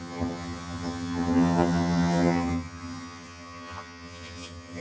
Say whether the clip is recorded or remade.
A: remade